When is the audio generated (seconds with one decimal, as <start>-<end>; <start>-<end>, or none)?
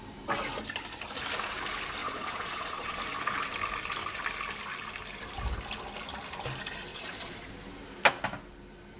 2.0-3.0; 6.9-7.5